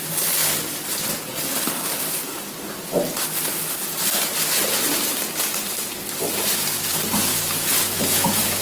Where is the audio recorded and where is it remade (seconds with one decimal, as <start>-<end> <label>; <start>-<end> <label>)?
0.0-7.3 recorded; 7.3-8.6 remade